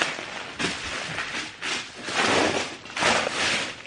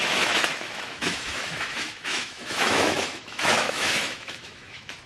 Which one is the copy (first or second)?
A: second